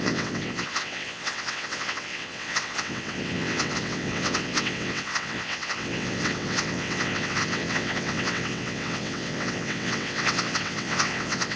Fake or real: fake